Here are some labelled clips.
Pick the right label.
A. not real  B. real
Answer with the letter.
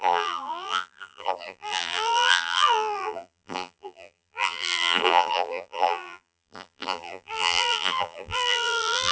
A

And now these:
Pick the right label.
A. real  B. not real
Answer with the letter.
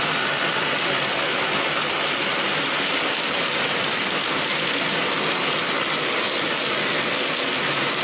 A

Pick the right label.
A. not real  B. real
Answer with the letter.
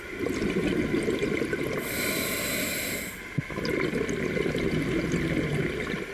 B